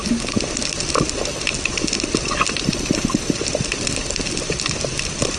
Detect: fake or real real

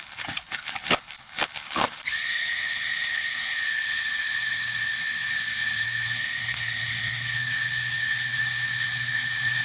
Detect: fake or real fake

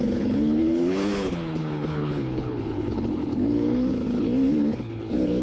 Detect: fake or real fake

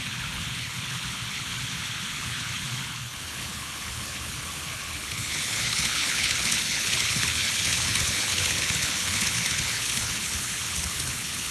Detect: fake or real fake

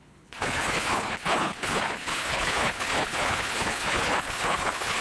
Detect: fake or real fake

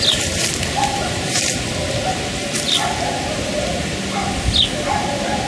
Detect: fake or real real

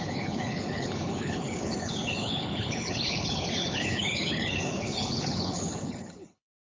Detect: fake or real fake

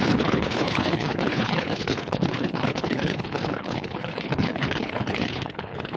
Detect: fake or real fake